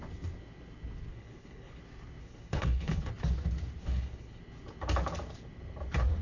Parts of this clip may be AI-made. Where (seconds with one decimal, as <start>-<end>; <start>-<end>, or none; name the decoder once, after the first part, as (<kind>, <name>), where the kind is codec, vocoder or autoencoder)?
1.1-1.8 (codec, HILCodec); 2.2-3.1; 3.8-4.4